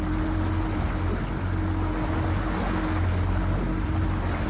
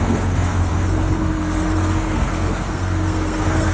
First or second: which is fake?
second